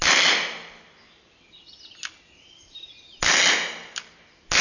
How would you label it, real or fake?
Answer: real